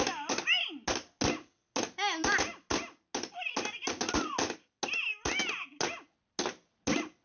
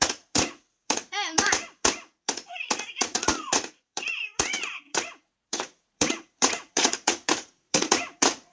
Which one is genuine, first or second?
first